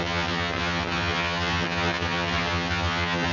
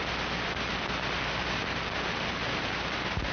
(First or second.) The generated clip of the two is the first